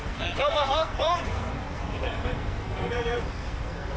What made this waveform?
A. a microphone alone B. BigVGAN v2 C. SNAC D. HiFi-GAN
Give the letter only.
C